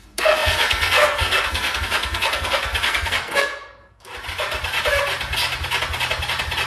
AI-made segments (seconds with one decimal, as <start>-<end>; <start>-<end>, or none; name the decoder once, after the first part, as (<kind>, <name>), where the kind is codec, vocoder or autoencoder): 0.0-4.1 (codec, SNAC)